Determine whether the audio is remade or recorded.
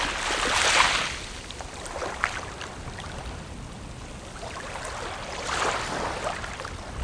recorded